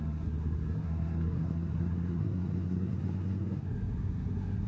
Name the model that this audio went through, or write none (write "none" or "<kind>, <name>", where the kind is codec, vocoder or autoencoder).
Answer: codec, SNAC